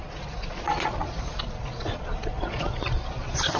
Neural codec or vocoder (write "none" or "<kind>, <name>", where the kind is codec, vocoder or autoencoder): vocoder, Vocos